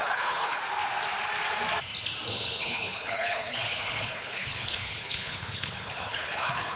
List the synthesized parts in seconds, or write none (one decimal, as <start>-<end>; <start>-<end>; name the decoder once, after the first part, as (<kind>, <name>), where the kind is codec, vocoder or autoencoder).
0.0-0.6 (codec, HILCodec); 2.3-6.8